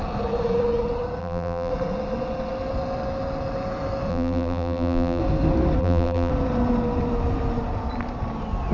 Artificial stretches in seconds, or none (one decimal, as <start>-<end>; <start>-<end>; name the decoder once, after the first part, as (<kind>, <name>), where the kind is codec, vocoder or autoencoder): 1.2-1.7 (vocoder, BigVGAN v2); 4.1-5.2; 5.8-6.3